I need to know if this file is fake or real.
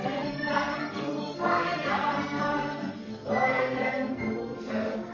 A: fake